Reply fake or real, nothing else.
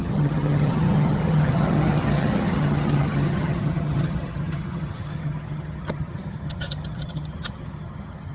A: fake